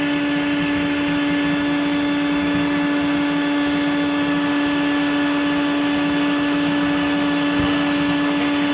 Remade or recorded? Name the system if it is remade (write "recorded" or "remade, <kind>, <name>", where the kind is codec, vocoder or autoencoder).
recorded